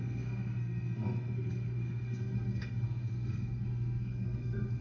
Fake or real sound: fake